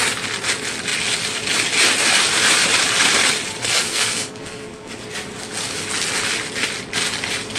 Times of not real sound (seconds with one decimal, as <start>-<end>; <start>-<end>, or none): 3.6-4.9